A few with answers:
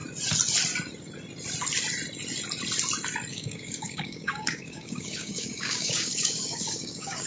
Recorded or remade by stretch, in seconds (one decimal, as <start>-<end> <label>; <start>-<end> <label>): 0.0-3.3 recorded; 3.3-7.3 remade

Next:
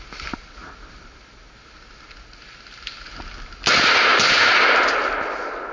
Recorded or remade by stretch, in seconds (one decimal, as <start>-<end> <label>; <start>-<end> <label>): 0.0-5.7 recorded

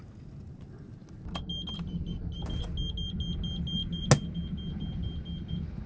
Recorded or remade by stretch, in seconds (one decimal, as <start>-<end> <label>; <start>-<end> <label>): 0.0-5.9 recorded

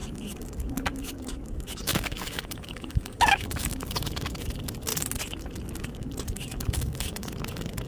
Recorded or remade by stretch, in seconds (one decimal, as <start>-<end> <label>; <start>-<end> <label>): 0.0-4.9 remade; 4.9-5.8 recorded; 5.8-7.9 remade

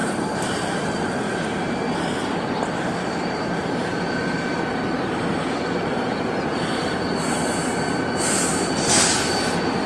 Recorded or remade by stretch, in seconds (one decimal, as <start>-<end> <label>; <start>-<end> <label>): 0.0-1.0 remade; 1.0-9.9 recorded